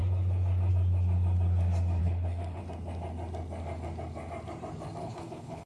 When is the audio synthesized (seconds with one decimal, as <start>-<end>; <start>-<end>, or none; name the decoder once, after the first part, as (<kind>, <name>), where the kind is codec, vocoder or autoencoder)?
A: 2.0-2.6 (codec, HILCodec); 5.0-5.7